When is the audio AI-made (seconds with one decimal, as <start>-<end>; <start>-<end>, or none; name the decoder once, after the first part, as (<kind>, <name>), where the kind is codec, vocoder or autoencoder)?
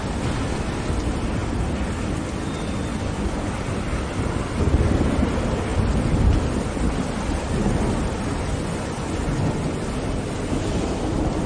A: 2.9-3.5 (vocoder, Vocos); 8.3-9.8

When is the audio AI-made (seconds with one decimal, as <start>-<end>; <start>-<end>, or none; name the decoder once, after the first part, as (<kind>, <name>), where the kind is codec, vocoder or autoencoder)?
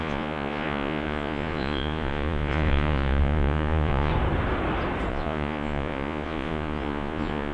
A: 0.0-4.1 (vocoder, Vocos); 5.1-7.5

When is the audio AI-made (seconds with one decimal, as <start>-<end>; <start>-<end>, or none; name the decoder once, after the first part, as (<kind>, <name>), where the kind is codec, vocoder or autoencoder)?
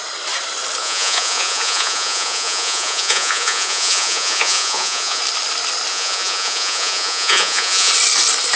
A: 0.8-5.2 (vocoder, Vocos); 5.9-7.9